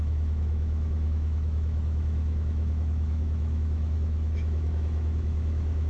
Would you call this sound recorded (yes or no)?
no